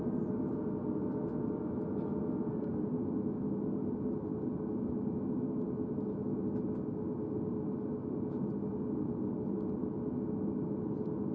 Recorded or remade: recorded